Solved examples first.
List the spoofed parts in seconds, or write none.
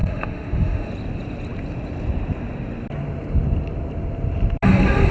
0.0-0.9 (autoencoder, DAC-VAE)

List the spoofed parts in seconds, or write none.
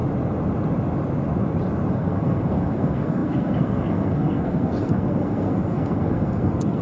1.9-6.8 (codec, SNAC)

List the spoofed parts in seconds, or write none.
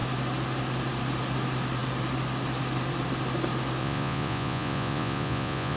3.8-5.8 (vocoder, Vocos)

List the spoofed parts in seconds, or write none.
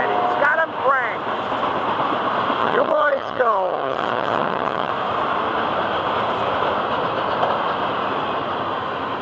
2.6-4.9 (vocoder, HiFi-GAN)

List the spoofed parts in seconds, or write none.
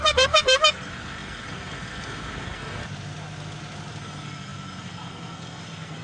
0.0-2.8 (codec, SNAC); 4.0-6.0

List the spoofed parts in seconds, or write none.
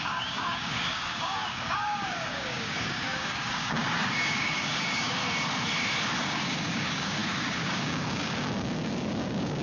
0.0-5.2 (codec, DAC); 6.2-9.6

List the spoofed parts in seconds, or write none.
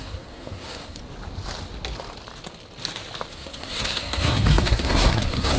0.0-1.0 (codec, SNAC); 3.3-5.6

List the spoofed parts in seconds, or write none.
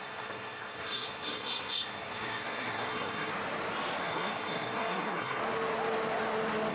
0.0-3.3 (codec, SNAC); 4.0-5.4